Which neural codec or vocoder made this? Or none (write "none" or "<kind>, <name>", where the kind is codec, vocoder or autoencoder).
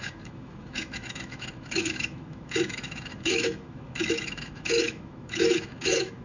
autoencoder, DAC-VAE